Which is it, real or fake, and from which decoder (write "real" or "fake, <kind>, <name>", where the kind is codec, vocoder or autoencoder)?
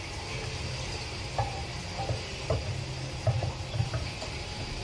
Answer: real